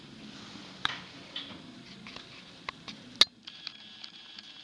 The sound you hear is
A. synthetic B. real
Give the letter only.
B